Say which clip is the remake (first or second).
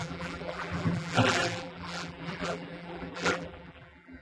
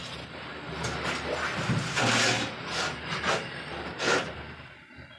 first